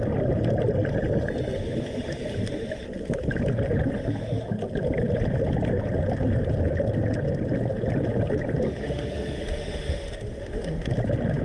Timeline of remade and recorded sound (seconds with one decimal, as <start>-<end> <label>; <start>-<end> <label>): 0.0-8.8 recorded; 8.8-10.9 remade; 10.9-11.4 recorded